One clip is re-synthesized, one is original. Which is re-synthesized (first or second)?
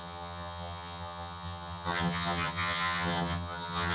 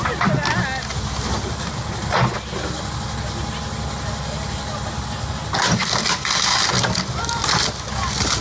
first